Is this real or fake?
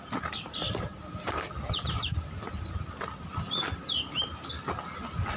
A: real